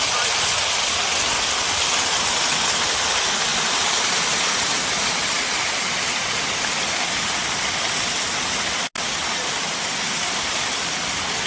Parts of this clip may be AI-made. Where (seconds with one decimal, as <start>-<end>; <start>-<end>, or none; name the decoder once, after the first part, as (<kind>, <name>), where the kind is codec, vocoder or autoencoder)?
3.5-4.3 (vocoder, BigVGAN v2)